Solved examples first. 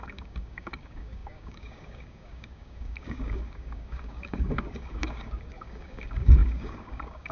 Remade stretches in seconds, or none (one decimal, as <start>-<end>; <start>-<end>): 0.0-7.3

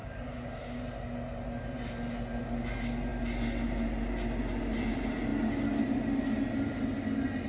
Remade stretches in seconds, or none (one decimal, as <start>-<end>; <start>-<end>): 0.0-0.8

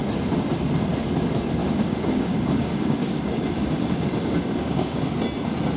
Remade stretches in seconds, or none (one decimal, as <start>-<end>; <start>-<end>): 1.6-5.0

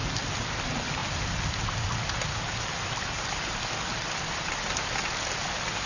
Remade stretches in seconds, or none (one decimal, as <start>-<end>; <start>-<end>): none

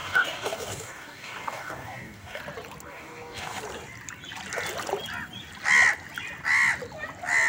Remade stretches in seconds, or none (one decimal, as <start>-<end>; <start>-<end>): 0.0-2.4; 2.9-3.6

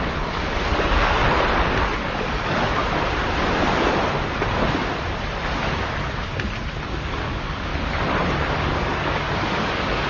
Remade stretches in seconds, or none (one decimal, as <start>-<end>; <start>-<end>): 0.0-1.2; 2.0-2.8; 6.9-7.7; 8.6-10.1